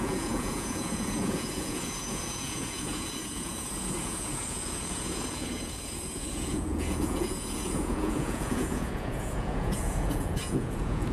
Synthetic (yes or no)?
yes